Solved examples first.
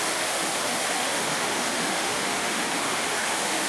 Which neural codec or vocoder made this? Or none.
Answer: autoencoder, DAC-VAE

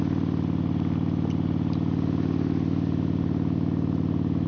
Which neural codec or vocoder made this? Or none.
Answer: none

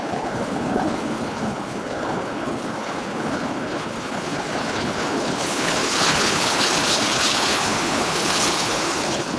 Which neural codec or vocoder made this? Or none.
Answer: codec, HILCodec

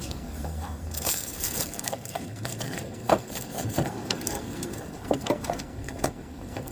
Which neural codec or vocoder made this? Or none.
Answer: codec, SNAC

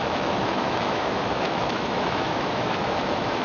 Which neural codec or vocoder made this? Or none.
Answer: autoencoder, DAC-VAE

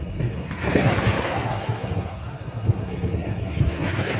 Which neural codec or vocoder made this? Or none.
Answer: codec, SNAC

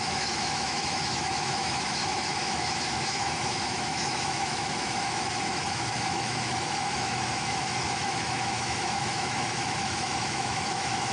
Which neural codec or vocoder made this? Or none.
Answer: autoencoder, DAC-VAE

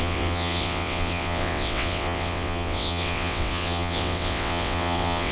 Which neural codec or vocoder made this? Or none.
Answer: vocoder, WaveNeXt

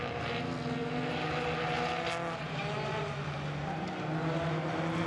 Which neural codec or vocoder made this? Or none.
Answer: none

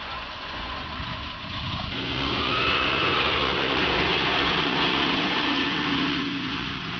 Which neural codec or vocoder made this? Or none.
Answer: vocoder, Vocos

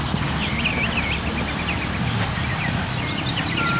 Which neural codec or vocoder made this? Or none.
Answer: none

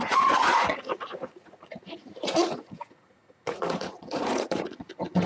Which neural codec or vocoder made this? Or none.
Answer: vocoder, Vocos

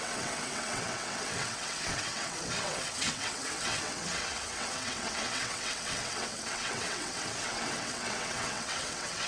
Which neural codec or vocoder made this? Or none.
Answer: vocoder, WaveNeXt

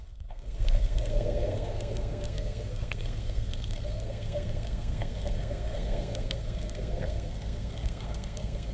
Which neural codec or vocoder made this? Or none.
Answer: codec, SNAC